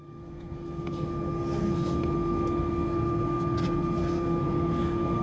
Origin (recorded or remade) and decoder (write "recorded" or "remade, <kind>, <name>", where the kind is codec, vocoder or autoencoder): remade, codec, SNAC